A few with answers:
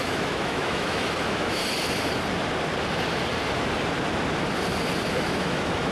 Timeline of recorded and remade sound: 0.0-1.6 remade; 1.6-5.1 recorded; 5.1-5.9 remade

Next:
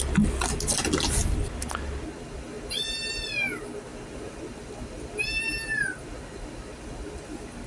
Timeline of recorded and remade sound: 0.0-7.7 recorded